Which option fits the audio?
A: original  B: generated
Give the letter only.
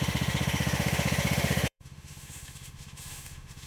B